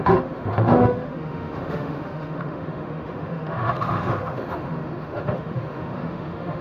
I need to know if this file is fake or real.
fake